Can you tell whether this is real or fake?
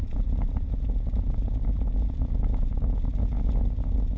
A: fake